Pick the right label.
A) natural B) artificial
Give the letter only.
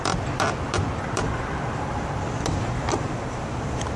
A